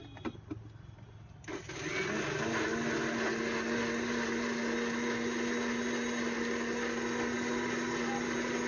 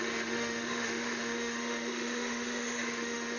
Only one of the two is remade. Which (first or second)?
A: second